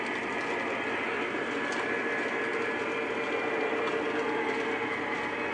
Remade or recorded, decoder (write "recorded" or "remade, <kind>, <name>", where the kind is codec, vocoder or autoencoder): recorded